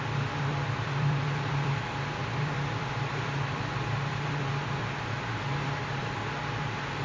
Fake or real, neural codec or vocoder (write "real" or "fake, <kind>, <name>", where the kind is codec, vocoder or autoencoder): fake, vocoder, BigVGAN v2